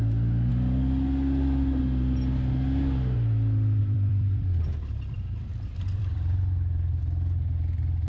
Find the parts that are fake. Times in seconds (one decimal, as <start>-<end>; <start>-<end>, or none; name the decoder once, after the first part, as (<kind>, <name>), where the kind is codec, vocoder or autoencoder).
0.5-1.8 (vocoder, BigVGAN v2); 3.8-7.0

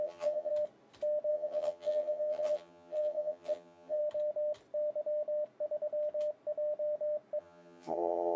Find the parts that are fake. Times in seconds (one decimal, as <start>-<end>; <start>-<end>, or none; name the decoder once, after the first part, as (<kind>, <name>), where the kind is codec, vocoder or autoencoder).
0.0-0.5 (vocoder, HiFi-GAN); 1.3-4.0; 7.4-8.4

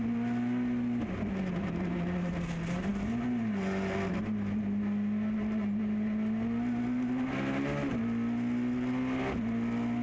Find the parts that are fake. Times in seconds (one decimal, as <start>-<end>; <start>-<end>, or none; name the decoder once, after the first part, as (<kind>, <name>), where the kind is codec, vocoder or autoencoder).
none

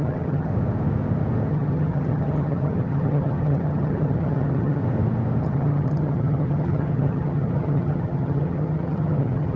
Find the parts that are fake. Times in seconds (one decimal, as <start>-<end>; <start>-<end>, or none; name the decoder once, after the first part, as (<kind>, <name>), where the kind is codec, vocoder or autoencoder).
0.0-0.5 (vocoder, HiFi-GAN); 1.5-4.8; 5.4-9.6